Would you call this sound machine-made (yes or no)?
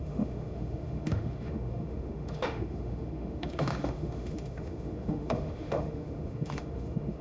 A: yes